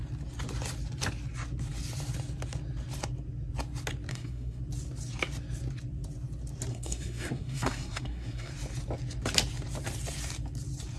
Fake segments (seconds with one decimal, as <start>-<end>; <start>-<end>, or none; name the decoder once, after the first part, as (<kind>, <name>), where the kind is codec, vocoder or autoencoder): 4.1-4.6 (codec, SNAC); 6.7-8.5